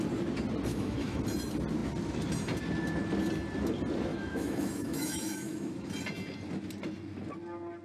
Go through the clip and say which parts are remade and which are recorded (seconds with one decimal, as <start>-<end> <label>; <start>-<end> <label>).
0.0-0.7 recorded; 0.7-1.2 remade; 1.2-4.1 recorded; 4.1-5.9 remade; 5.9-7.8 recorded